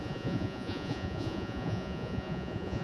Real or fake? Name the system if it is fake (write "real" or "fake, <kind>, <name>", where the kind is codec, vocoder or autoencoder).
fake, vocoder, Vocos